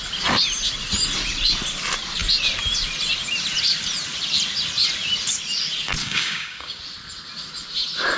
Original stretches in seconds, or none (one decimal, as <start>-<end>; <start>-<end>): 0.0-6.0; 6.8-8.2